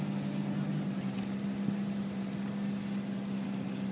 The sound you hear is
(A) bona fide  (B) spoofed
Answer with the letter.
A